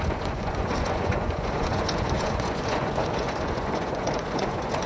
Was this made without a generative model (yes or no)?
no